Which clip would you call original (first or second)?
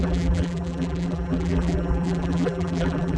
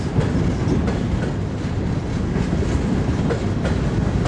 second